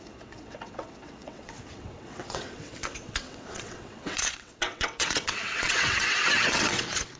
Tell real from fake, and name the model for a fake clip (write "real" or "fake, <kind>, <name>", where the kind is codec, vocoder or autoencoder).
fake, vocoder, WaveNeXt